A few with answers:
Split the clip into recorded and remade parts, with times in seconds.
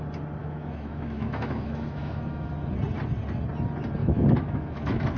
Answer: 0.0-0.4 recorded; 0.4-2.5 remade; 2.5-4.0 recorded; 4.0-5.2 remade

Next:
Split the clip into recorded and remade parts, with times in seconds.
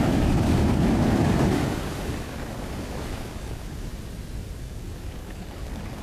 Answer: 0.0-3.9 remade; 3.9-4.6 recorded; 4.6-6.0 remade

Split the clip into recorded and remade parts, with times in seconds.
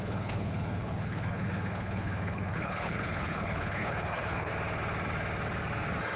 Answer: 0.0-4.5 remade; 4.5-6.2 recorded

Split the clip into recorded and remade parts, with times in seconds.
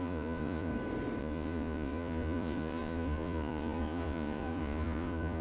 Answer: 0.0-0.7 remade; 0.7-1.2 recorded; 1.2-5.4 remade